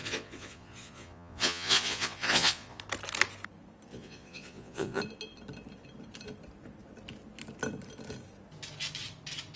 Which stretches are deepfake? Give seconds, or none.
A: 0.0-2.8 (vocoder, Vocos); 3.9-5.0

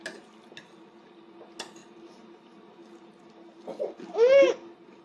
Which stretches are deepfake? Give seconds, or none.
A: none

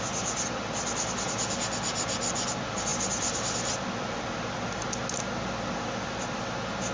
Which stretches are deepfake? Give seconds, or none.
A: 2.9-3.7 (vocoder, BigVGAN v2)

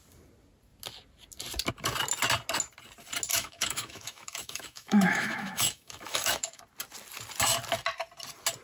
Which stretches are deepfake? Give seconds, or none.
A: 3.3-6.6 (autoencoder, DAC-VAE)